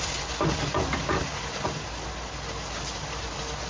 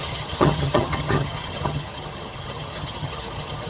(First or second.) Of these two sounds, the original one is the first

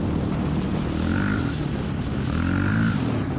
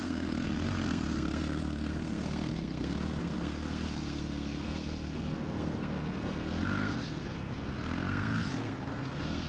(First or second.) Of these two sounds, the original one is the first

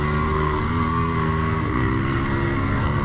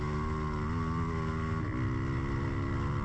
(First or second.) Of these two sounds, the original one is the second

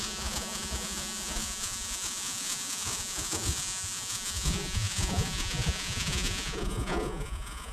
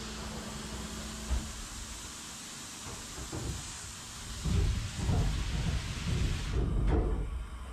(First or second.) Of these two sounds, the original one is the second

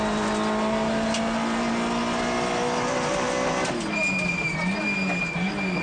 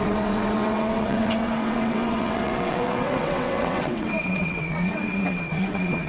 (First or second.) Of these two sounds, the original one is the first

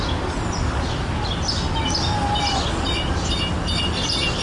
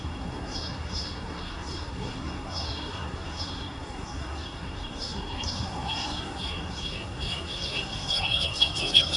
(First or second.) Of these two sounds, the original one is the first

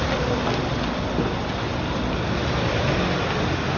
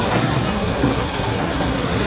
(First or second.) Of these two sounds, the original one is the first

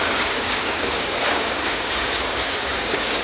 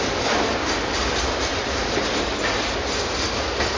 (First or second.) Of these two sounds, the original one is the second